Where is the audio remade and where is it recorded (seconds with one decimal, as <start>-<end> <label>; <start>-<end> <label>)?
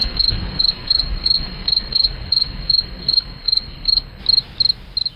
0.0-4.2 remade; 4.2-5.2 recorded